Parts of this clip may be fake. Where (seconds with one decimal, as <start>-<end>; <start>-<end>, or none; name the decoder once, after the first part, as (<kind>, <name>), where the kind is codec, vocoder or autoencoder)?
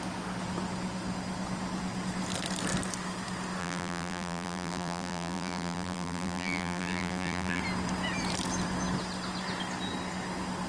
3.6-7.6 (vocoder, BigVGAN v2)